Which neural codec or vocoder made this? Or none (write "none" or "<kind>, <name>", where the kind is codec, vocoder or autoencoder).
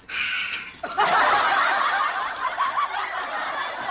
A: none